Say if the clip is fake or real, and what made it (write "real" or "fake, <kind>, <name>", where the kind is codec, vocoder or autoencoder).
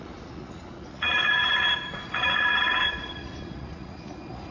fake, vocoder, Vocos